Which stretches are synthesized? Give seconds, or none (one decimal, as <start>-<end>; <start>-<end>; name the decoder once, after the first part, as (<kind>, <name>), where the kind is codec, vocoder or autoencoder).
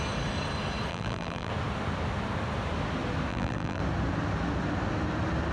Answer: 0.9-1.5 (vocoder, BigVGAN v2); 3.3-3.8